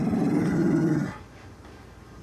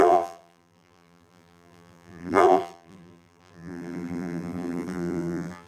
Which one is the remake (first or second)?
second